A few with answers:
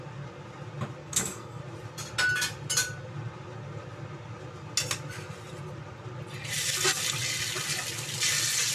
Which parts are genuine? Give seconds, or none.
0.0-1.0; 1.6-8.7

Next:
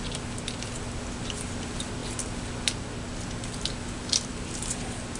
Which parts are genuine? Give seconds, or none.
0.0-5.2

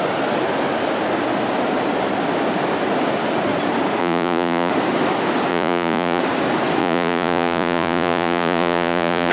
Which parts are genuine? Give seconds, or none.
0.0-4.0; 4.7-5.5; 6.2-6.8

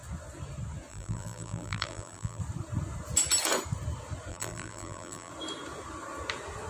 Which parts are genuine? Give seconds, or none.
0.0-0.9; 2.4-4.3; 5.3-6.7

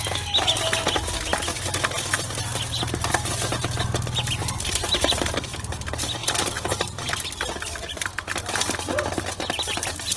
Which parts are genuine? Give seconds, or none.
0.0-4.4; 5.2-7.7; 9.2-10.2

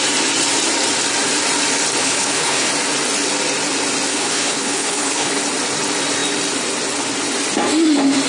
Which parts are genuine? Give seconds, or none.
0.0-2.0; 2.7-4.1; 5.3-8.3

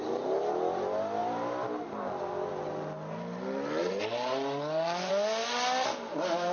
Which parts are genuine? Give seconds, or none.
0.0-6.5